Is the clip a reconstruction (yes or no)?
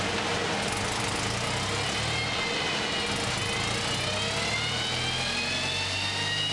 no